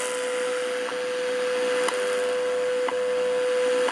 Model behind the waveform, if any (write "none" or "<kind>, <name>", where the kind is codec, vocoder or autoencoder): none